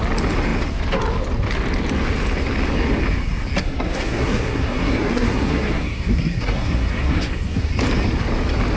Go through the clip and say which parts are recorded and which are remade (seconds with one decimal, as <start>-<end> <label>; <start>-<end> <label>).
0.0-3.6 recorded; 3.6-7.7 remade; 7.7-8.8 recorded